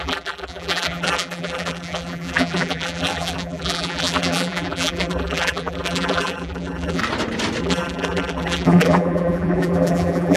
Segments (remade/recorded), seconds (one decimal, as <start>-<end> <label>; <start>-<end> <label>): 0.0-7.0 remade; 7.0-7.6 recorded; 7.6-10.4 remade